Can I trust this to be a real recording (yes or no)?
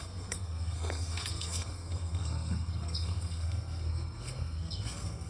no